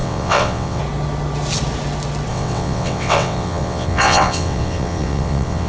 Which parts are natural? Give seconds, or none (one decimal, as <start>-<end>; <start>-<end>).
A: 0.8-2.3